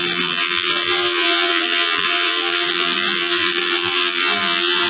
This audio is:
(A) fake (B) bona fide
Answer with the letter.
A